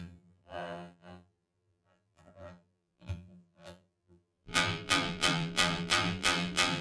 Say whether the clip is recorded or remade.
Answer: remade